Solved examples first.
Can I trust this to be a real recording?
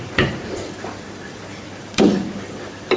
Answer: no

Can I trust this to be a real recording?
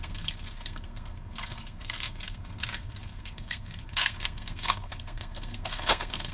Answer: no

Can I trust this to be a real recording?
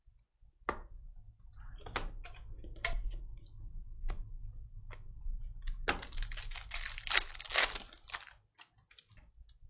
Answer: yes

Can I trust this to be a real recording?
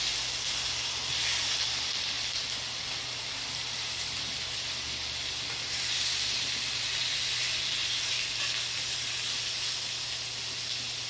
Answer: yes